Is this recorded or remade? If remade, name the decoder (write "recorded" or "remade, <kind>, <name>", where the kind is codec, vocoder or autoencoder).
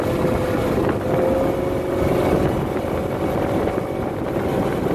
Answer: recorded